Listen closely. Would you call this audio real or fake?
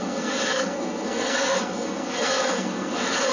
fake